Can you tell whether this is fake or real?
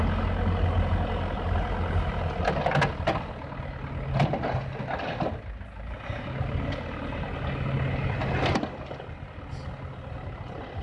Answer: real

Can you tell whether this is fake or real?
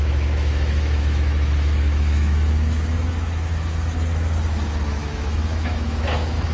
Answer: fake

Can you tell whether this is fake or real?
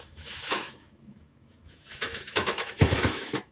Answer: fake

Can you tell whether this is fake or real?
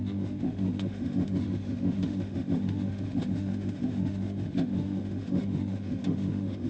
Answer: fake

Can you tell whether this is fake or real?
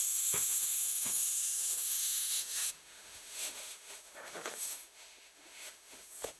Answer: fake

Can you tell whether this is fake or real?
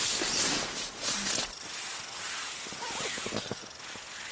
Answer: real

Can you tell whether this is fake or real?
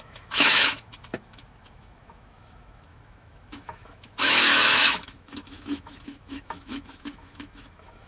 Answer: fake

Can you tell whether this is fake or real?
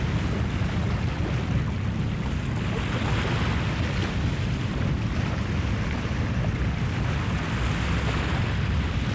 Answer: real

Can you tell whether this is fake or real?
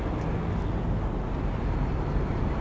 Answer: real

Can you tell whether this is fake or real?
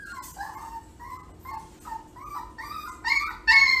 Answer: real